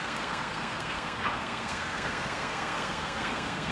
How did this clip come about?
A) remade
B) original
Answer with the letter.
A